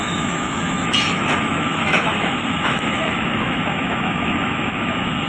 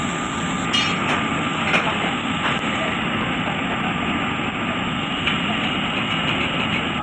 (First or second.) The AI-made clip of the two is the first